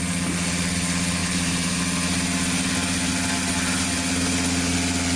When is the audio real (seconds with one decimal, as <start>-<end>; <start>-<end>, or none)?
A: 0.0-1.2; 1.8-5.2